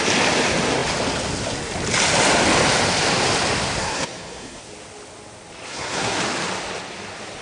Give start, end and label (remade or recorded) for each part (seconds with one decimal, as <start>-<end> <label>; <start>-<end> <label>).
0.0-3.8 recorded; 3.8-4.6 remade; 4.6-5.7 recorded; 5.7-6.2 remade; 6.2-7.4 recorded